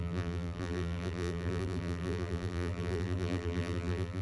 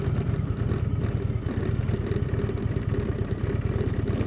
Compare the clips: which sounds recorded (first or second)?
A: second